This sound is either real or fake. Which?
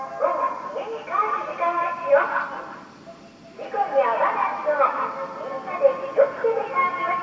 real